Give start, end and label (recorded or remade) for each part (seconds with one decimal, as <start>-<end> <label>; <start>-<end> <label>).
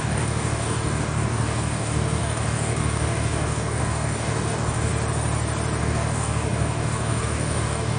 0.0-4.9 remade; 4.9-5.8 recorded; 5.8-8.0 remade